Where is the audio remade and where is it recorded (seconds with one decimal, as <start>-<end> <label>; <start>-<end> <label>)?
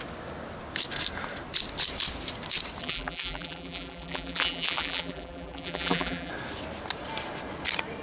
0.0-2.8 recorded; 2.8-6.3 remade; 6.3-8.0 recorded